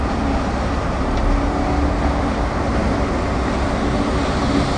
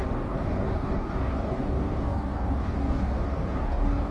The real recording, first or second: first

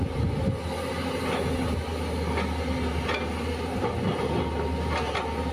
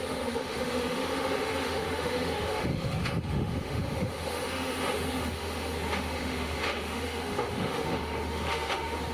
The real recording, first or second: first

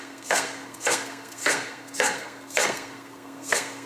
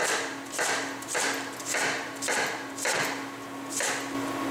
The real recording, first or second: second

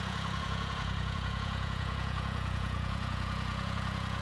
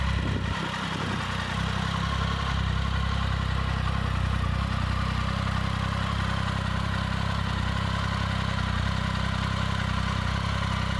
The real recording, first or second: second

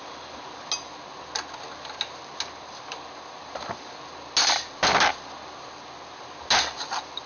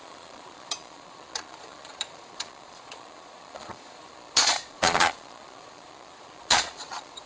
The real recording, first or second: first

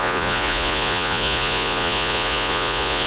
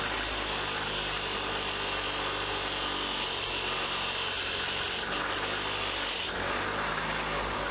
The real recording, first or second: second